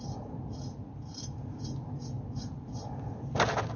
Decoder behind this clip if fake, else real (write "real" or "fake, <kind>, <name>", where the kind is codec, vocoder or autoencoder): real